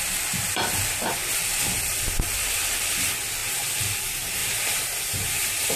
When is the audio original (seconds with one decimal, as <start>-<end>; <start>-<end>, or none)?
0.0-3.4; 4.0-4.4